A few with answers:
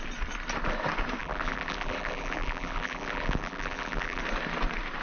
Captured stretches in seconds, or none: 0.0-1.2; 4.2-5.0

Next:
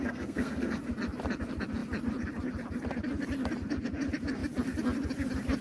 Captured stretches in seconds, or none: 0.8-5.6

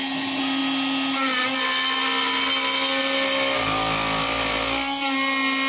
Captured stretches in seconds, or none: 0.0-5.7